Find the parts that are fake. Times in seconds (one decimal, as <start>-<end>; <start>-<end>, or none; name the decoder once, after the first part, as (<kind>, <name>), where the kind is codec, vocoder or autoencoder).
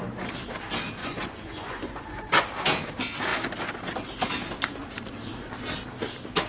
1.0-2.4 (vocoder, Vocos)